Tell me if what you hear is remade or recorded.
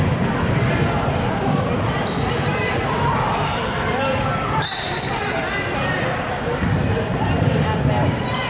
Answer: recorded